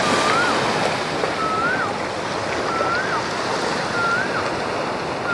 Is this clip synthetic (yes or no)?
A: no